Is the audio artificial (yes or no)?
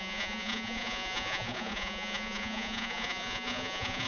yes